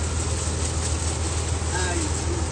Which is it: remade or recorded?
recorded